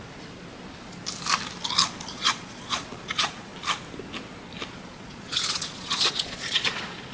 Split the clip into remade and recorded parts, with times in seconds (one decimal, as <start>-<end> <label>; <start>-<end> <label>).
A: 0.0-2.1 recorded; 2.1-3.5 remade; 3.5-4.7 recorded; 4.7-7.1 remade